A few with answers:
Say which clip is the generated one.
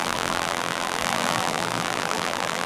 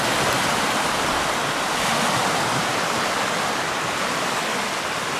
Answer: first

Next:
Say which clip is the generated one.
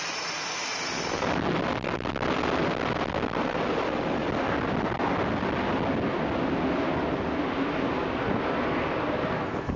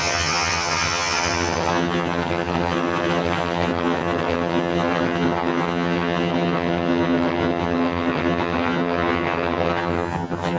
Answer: second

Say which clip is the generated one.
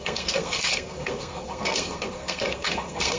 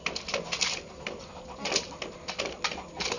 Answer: first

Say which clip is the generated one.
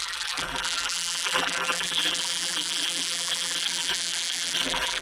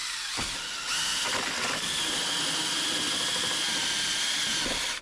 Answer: first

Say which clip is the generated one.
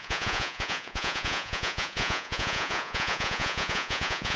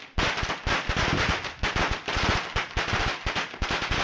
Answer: first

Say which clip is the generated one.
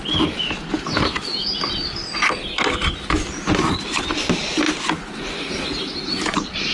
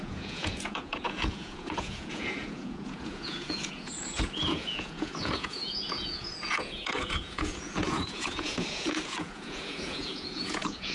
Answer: second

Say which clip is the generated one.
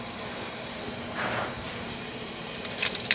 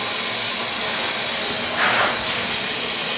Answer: first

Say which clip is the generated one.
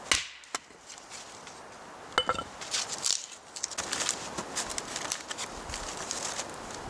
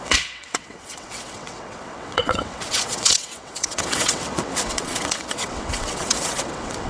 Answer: second